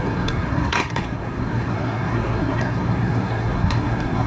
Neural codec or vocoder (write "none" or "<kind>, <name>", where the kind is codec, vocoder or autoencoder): codec, SNAC